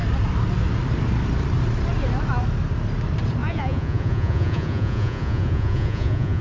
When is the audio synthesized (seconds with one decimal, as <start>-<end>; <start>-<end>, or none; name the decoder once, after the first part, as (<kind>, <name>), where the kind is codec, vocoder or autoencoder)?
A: 3.4-6.4 (vocoder, Vocos)